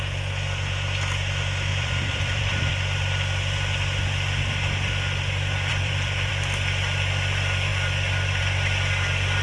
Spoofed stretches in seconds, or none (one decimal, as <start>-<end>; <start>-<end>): 1.7-2.7; 5.7-6.3